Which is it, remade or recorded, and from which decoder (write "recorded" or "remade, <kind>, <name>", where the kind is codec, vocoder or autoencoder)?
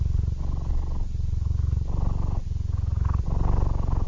recorded